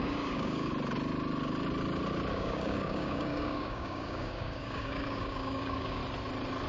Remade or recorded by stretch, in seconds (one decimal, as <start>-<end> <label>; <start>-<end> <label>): 0.0-0.7 remade; 0.7-2.3 recorded; 2.3-6.0 remade; 6.0-6.7 recorded